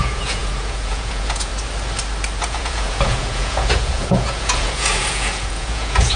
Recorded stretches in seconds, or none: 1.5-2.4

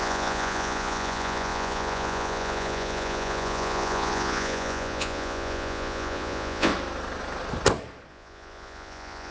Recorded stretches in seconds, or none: 6.7-8.1